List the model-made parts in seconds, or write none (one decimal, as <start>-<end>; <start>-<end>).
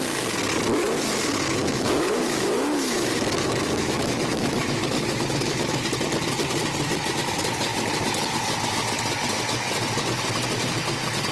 1.6-5.8